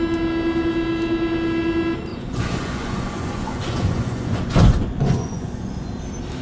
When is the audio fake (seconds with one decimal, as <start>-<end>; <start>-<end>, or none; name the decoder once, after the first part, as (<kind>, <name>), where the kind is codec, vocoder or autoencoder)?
2.1-5.9 (vocoder, Vocos)